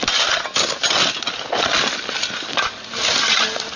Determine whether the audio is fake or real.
fake